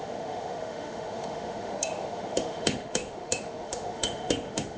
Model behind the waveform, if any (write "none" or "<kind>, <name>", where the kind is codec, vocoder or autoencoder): autoencoder, DAC-VAE